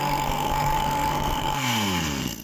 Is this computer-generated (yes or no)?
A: yes